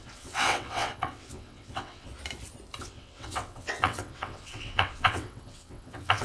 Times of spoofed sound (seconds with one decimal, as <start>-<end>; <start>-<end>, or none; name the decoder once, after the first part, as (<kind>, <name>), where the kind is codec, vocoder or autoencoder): 0.0-2.1 (vocoder, WaveNeXt); 2.8-6.2